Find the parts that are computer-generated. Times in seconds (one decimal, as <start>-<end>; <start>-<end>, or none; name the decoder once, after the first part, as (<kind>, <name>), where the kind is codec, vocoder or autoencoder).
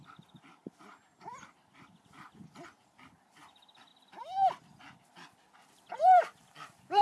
0.0-3.9 (vocoder, BigVGAN v2); 6.0-7.0